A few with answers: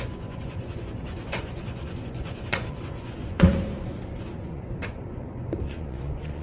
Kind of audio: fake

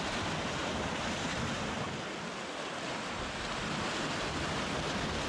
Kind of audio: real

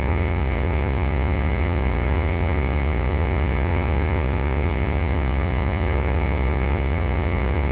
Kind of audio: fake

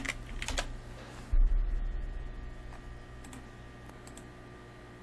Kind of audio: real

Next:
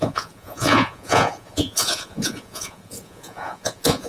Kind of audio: fake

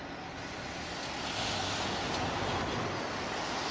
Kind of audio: real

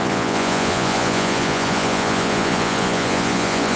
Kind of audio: fake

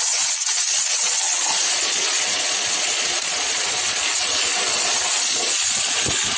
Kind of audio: fake